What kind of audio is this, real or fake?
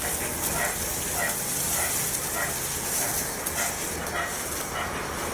real